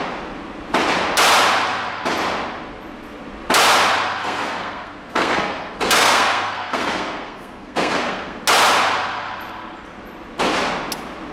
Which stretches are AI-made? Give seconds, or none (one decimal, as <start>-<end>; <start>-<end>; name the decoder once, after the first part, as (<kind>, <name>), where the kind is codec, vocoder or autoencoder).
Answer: 4.2-8.4 (codec, SNAC)